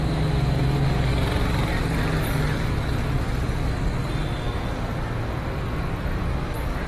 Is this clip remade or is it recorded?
recorded